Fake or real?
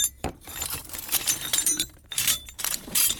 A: fake